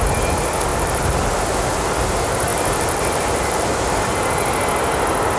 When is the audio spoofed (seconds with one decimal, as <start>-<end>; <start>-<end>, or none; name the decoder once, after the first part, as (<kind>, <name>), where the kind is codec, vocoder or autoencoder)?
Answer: 0.7-1.2 (vocoder, BigVGAN v2); 2.5-4.1